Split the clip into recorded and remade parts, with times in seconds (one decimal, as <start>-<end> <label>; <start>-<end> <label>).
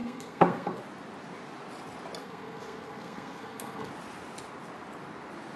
0.0-0.8 remade; 0.8-2.2 recorded; 2.2-3.9 remade; 3.9-5.6 recorded